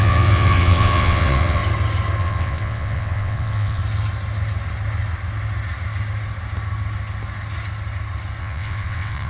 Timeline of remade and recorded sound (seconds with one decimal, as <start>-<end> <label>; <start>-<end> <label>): 0.0-1.6 remade; 1.6-2.2 recorded; 2.2-3.8 remade; 3.8-8.4 recorded; 8.4-9.3 remade

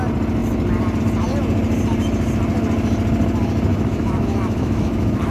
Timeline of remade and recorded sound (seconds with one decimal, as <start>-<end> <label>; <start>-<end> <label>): 0.0-3.7 recorded; 3.7-5.3 remade

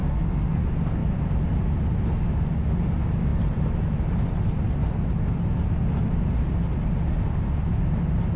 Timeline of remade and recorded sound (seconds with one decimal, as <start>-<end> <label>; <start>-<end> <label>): 0.0-0.6 remade; 0.6-8.4 recorded